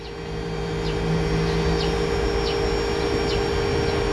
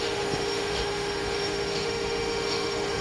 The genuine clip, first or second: first